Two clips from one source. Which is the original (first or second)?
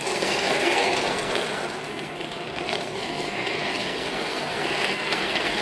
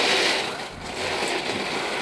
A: second